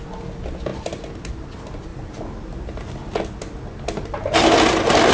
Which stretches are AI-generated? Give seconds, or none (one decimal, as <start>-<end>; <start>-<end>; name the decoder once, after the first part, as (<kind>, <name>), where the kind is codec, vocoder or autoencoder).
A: none